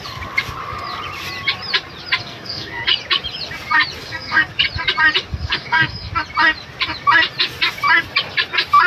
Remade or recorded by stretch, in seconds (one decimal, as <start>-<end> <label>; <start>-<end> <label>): 0.0-2.2 recorded; 2.2-2.8 remade; 2.8-4.0 recorded; 4.0-4.5 remade; 4.5-5.3 recorded; 5.3-6.1 remade; 6.1-8.9 recorded